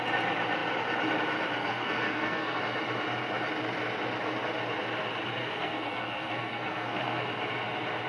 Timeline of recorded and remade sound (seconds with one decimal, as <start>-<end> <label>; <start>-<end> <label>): 0.0-1.6 recorded; 1.6-2.6 remade; 2.6-5.4 recorded; 5.4-7.2 remade; 7.2-8.1 recorded